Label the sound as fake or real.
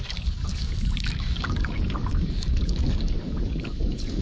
fake